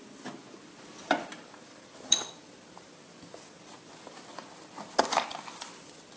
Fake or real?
fake